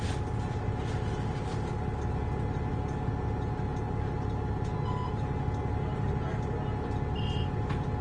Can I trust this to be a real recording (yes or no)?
yes